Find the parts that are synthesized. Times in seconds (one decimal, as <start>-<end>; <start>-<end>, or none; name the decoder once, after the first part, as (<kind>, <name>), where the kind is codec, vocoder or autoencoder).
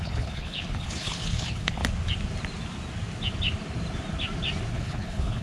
0.0-1.8 (codec, HILCodec); 4.7-5.4